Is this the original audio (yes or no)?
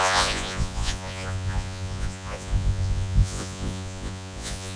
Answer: no